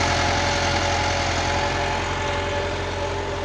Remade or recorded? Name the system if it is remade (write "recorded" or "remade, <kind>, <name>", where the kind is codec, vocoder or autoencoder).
recorded